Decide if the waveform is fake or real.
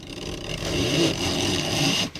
fake